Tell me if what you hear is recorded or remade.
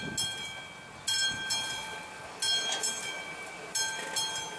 recorded